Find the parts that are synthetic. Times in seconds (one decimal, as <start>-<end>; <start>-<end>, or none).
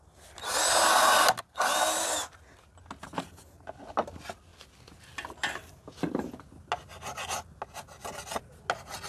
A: none